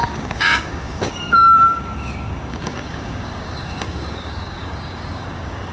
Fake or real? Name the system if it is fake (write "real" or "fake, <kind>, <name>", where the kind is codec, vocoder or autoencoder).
fake, codec, DAC